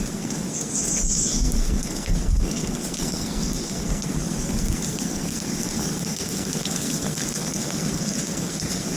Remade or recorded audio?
remade